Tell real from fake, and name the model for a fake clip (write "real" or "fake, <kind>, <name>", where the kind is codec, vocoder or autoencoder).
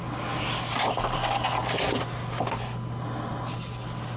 real